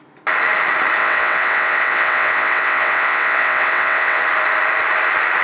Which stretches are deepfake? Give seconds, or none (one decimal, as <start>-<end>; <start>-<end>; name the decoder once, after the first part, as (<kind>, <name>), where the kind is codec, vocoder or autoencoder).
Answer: 1.0-4.2 (vocoder, WaveNeXt)